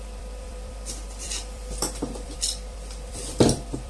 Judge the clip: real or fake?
fake